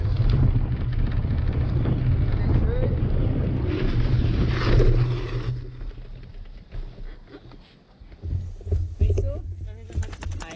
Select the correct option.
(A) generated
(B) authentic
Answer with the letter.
B